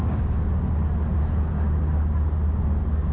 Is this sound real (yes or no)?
yes